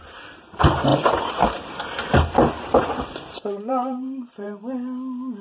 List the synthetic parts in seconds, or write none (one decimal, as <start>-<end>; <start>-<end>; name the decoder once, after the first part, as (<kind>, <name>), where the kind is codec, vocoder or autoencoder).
0.0-4.6 (vocoder, BigVGAN v2)